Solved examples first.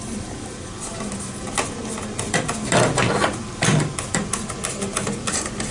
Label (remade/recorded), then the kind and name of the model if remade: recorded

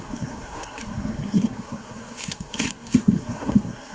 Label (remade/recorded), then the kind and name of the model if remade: remade, codec, SNAC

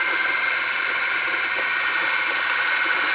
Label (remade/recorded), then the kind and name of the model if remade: recorded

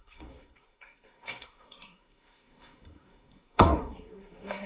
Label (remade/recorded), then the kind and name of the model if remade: remade, codec, SNAC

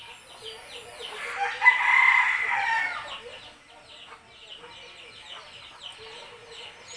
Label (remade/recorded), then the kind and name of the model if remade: recorded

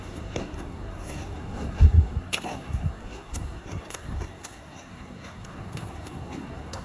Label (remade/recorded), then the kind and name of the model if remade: remade, codec, SNAC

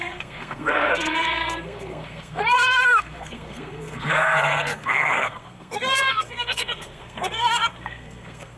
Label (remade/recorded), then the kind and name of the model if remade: remade, codec, SNAC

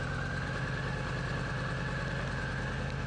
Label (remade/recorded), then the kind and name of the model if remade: recorded